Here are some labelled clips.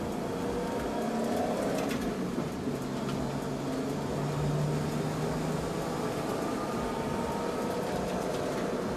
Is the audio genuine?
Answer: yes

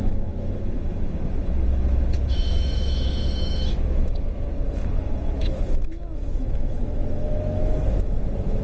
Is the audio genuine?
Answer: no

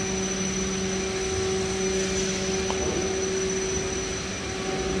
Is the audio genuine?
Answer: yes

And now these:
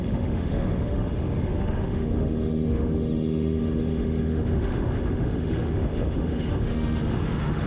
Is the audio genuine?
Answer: no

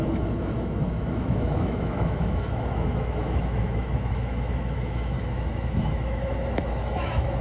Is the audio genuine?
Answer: no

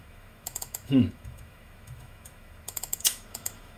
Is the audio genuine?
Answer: no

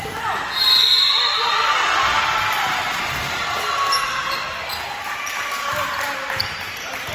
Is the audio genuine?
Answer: yes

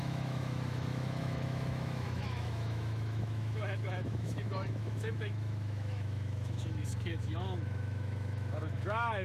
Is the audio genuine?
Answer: no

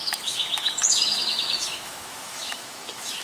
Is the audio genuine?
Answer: no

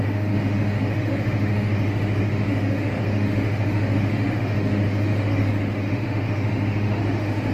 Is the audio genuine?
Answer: no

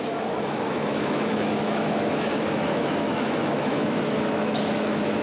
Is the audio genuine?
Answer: no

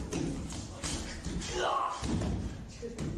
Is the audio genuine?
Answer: yes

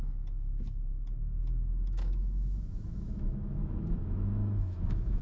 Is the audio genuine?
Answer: no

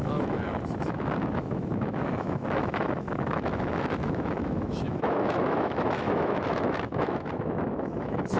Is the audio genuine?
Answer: no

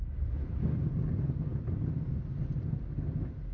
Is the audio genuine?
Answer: yes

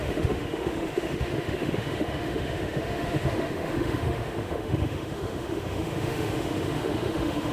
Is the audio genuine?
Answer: no